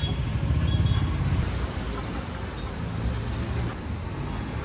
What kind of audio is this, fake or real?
real